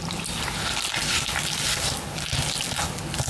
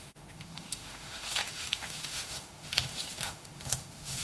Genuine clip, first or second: first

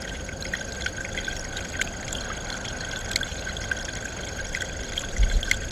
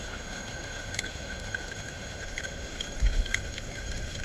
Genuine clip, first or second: first